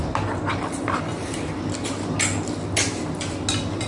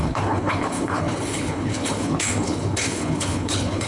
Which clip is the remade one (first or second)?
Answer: second